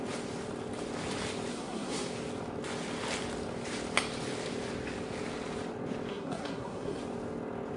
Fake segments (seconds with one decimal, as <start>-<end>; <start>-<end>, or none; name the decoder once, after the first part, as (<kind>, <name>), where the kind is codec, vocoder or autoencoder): 1.5-2.1 (codec, SNAC); 6.1-7.0